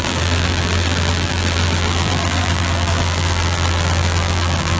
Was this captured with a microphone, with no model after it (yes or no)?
no